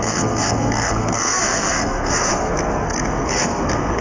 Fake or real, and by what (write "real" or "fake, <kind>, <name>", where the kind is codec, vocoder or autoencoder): fake, codec, SNAC